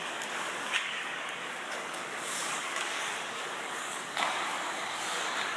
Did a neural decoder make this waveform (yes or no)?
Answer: yes